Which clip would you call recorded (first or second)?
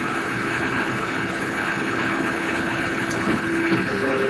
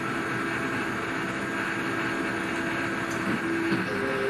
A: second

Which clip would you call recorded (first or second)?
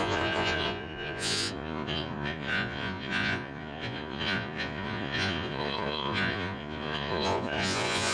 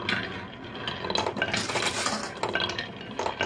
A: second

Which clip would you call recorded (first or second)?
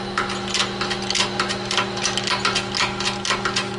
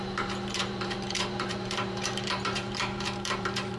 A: first